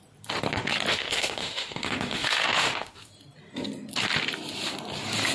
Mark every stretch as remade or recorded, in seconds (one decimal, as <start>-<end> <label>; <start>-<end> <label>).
0.0-0.9 recorded; 0.9-3.1 remade; 3.1-5.3 recorded